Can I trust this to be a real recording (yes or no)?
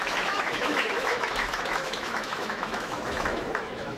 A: no